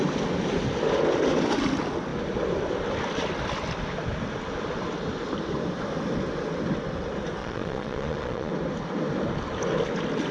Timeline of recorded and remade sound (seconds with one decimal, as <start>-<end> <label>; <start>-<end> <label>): 0.0-7.4 recorded; 7.4-8.5 remade; 8.5-10.3 recorded